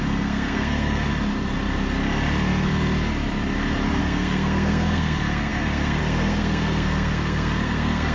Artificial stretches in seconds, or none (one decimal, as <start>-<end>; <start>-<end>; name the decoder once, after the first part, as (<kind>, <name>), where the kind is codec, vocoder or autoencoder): 0.0-1.1 (codec, SNAC); 4.0-8.1